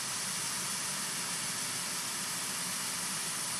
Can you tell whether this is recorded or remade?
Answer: recorded